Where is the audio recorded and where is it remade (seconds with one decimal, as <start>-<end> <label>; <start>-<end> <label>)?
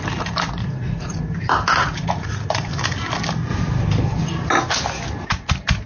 0.0-0.6 recorded; 0.6-1.2 remade; 1.2-1.8 recorded; 1.8-2.7 remade; 2.7-5.9 recorded